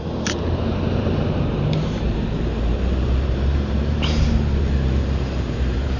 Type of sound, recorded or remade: remade